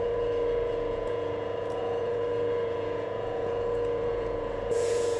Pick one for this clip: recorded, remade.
remade